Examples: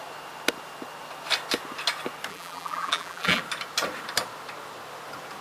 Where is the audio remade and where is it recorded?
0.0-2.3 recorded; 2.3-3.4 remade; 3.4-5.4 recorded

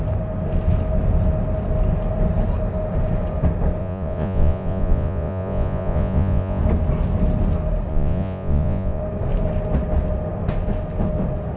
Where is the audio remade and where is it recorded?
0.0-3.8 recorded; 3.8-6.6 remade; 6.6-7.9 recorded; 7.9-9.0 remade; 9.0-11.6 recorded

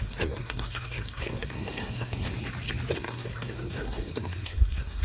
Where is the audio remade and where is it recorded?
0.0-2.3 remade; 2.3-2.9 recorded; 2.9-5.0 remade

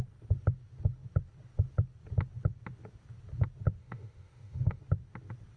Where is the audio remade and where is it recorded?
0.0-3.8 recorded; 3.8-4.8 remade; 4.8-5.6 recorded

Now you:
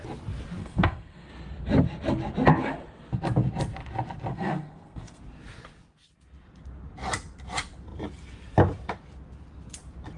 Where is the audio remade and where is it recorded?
0.0-0.6 recorded; 0.6-1.3 remade; 1.3-4.3 recorded; 4.3-5.2 remade; 5.2-10.2 recorded

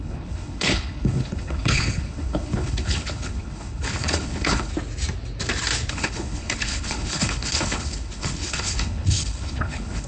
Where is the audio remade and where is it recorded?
0.0-4.7 remade; 4.7-5.9 recorded; 5.9-10.1 remade